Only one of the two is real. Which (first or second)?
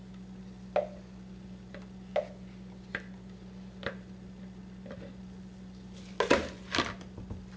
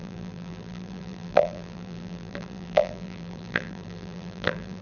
first